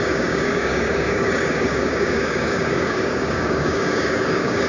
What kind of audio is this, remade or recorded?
remade